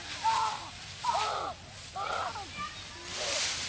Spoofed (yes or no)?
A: no